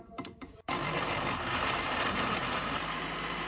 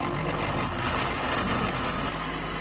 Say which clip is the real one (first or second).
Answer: second